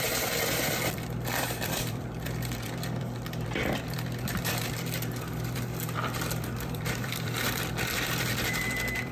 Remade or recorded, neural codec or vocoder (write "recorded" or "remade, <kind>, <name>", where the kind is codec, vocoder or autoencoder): remade, vocoder, BigVGAN v2